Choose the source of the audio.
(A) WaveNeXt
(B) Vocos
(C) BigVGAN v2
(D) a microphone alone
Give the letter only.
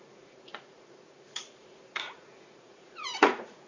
B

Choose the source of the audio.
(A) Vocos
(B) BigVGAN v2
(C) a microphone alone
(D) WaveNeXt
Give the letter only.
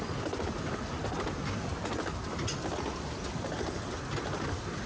C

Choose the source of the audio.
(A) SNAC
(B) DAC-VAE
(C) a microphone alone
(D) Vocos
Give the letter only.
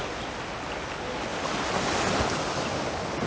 C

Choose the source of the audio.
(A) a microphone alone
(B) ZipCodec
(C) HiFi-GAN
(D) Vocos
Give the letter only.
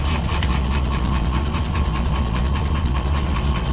D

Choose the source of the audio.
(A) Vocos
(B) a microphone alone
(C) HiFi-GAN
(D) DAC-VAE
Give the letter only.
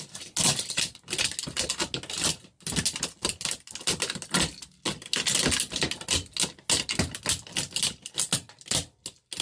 B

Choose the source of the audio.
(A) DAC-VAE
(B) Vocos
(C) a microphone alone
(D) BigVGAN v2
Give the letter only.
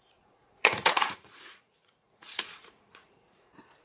B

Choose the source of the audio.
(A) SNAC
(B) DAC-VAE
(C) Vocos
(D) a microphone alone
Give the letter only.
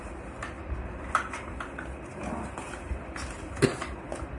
D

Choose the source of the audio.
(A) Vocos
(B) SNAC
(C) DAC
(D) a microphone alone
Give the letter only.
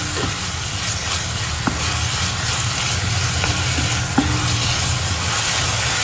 D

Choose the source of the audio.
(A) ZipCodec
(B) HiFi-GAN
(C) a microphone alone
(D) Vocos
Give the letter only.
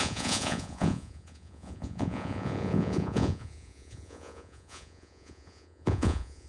D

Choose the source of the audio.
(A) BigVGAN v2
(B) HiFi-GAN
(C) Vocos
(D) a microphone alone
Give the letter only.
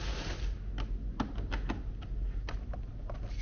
D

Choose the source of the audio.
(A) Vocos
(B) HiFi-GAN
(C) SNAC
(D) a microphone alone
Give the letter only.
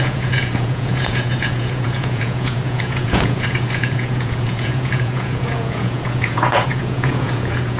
A